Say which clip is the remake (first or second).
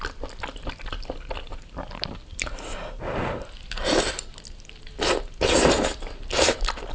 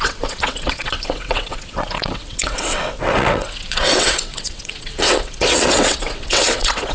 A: second